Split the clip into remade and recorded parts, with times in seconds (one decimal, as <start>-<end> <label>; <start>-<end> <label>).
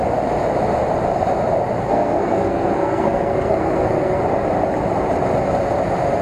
0.0-1.8 recorded; 1.8-4.2 remade; 4.2-6.2 recorded